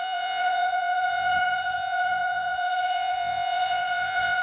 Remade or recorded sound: remade